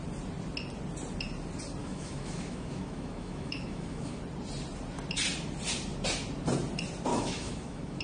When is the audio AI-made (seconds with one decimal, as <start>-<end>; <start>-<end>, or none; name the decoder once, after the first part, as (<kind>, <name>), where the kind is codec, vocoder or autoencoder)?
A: 1.8-4.2 (autoencoder, DAC-VAE); 7.1-8.0